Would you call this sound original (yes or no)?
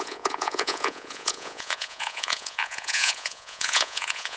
no